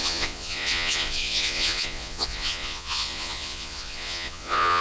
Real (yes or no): no